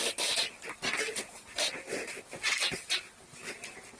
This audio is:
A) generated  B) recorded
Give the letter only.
B